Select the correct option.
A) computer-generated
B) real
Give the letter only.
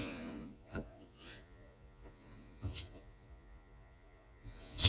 A